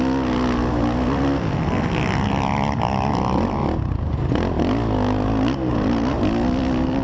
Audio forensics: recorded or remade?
recorded